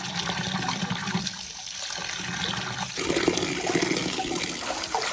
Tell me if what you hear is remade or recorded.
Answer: recorded